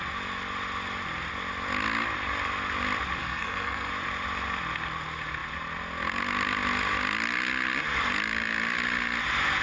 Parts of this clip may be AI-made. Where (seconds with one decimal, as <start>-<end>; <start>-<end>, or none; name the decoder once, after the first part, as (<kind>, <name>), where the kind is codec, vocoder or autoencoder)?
3.2-3.9 (codec, SNAC)